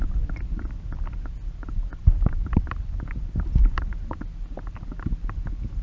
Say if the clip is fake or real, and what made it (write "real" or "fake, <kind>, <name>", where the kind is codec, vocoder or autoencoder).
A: real